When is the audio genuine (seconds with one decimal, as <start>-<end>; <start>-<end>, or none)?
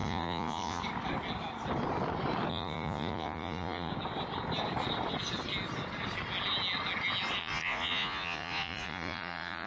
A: 0.8-2.5; 3.9-7.4